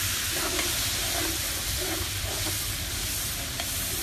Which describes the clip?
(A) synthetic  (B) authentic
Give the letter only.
B